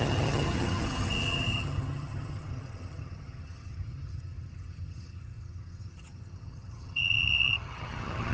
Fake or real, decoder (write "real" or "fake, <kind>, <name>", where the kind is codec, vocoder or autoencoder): fake, vocoder, HiFi-GAN